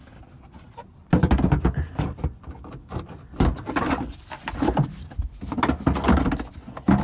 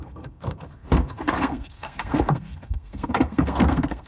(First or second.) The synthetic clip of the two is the second